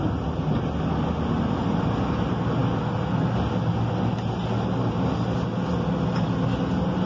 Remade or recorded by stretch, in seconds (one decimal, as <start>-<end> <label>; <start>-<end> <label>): 0.0-7.1 recorded